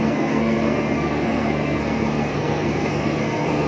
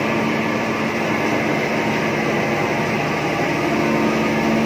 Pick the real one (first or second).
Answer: second